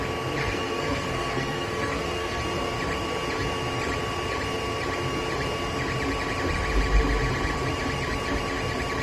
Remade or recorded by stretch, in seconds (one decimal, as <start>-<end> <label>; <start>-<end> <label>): 0.0-0.4 recorded; 0.4-2.4 remade; 2.4-9.0 recorded

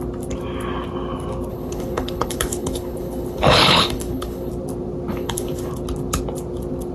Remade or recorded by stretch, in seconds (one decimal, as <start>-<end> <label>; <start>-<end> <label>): 0.0-1.5 recorded; 1.5-4.5 remade; 4.5-5.1 recorded; 5.1-5.7 remade; 5.7-6.9 recorded

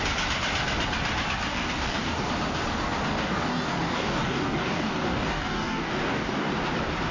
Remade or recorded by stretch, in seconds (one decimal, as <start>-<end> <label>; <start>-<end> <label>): 0.0-1.5 recorded; 1.5-2.3 remade; 2.3-3.1 recorded; 3.1-6.5 remade; 6.5-7.1 recorded

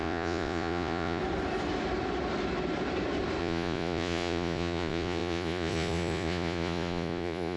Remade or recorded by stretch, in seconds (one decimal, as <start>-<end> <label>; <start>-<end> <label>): 0.0-1.2 remade; 1.2-3.4 recorded; 3.4-7.6 remade